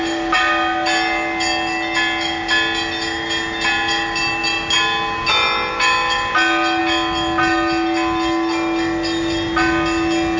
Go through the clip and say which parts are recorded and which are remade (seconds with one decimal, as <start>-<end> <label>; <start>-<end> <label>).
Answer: 0.0-10.4 recorded